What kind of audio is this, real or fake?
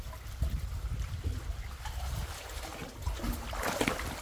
real